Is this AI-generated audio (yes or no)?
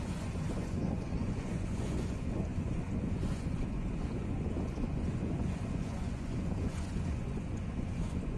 yes